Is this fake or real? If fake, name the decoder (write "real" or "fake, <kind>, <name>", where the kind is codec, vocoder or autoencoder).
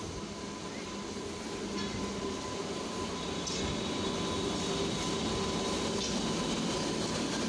real